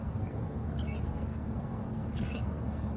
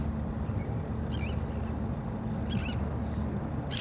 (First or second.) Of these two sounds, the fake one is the first